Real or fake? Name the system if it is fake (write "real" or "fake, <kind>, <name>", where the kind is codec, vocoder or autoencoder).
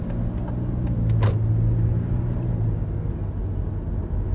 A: real